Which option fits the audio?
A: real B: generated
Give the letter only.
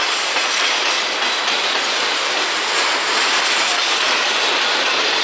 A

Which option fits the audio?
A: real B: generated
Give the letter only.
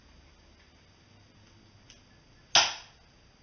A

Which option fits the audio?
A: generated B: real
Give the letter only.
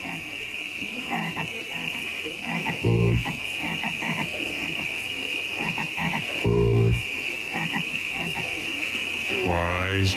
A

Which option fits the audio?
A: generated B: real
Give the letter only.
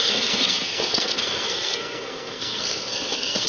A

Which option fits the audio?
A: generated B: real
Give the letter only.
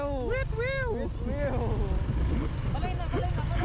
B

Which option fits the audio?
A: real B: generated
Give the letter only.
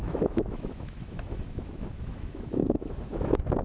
B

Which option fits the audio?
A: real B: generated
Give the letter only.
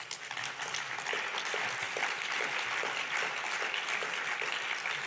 A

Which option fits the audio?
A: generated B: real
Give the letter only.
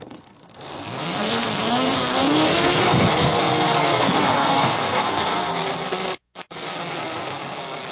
A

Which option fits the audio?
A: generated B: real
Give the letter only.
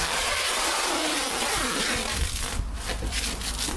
B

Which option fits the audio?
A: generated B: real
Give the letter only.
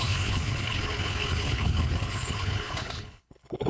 A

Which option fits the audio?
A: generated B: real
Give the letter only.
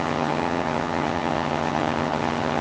A